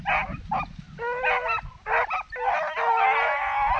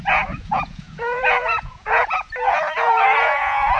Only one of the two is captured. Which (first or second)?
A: first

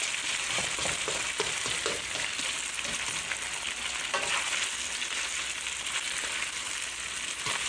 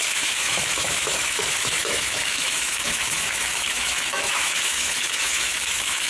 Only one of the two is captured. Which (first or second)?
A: first